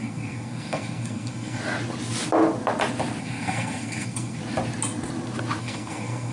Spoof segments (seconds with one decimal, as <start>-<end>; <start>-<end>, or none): 0.0-1.6; 3.2-4.4; 5.6-6.3